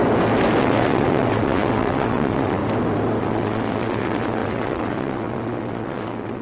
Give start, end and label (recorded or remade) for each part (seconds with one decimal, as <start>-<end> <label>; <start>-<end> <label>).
0.0-0.6 recorded; 0.6-2.6 remade; 2.6-3.2 recorded; 3.2-6.4 remade